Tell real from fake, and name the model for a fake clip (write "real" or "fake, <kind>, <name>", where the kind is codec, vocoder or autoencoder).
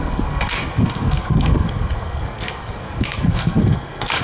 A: fake, codec, SNAC